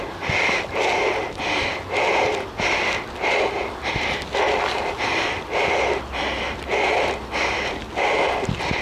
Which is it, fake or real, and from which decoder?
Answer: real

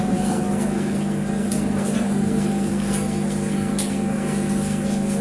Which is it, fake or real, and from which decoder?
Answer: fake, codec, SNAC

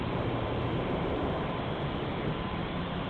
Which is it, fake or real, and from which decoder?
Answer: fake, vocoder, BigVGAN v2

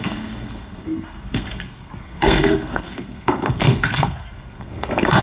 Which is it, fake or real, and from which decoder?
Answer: fake, codec, SNAC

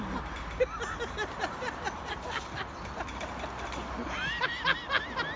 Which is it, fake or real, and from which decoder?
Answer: real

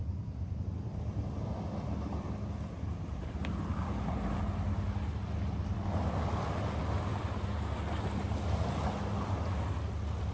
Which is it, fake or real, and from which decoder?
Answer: real